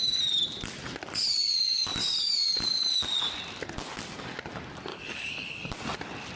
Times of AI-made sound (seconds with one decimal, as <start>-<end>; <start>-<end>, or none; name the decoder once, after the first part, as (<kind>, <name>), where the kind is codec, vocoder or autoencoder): 4.9-5.6 (codec, DAC)